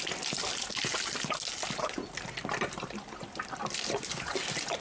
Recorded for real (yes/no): yes